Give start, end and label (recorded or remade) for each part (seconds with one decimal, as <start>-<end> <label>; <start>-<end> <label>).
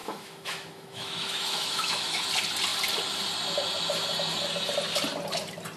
0.0-2.2 remade; 2.2-5.8 recorded